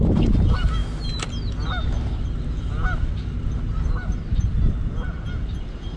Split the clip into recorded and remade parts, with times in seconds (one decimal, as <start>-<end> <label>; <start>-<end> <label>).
0.0-6.0 recorded